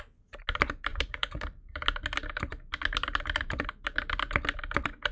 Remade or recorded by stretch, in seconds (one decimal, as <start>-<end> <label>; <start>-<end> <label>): 0.0-0.9 recorded; 0.9-1.4 remade; 1.4-5.1 recorded